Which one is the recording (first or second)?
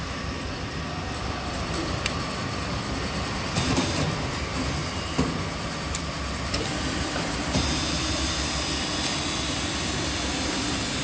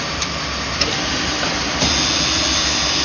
second